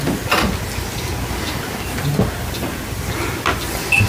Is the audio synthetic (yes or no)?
no